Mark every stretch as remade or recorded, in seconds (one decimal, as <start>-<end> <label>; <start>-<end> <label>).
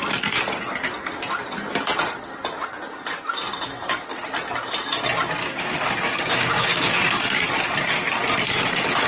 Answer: 0.0-5.4 recorded; 5.4-7.3 remade; 7.3-9.1 recorded